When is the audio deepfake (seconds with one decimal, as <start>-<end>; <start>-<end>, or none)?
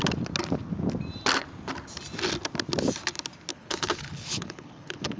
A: 3.5-5.2